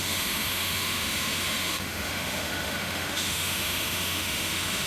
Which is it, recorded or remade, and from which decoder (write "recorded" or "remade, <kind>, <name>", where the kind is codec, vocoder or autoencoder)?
remade, autoencoder, DAC-VAE